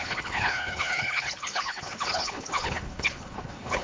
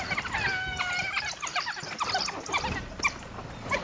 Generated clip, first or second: first